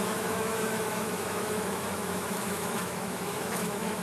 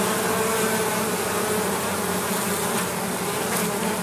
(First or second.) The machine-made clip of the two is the first